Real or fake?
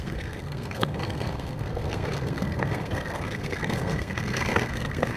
fake